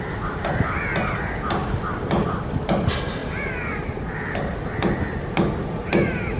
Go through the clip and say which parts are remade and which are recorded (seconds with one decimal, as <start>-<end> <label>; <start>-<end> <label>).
0.0-6.4 recorded